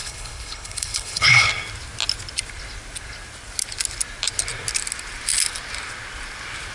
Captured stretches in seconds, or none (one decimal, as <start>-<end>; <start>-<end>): 1.5-6.7